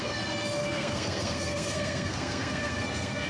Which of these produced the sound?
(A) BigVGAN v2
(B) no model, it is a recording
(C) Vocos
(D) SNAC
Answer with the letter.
D